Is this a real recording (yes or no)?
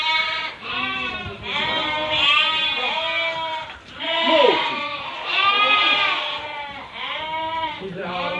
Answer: no